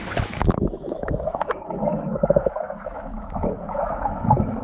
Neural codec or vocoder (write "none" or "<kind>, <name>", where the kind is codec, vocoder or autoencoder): autoencoder, DAC-VAE